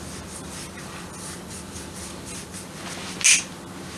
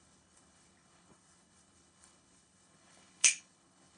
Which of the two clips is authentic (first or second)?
first